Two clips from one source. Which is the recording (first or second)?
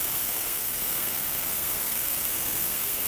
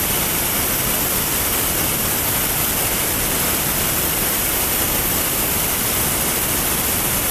second